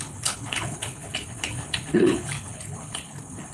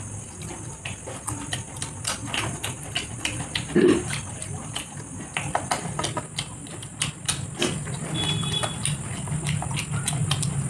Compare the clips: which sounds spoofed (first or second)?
first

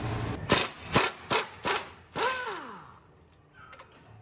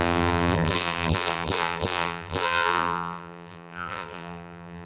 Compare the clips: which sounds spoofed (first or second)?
second